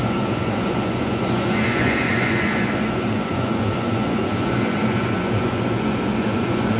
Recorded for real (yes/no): no